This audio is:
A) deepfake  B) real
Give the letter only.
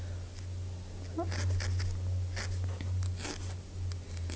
B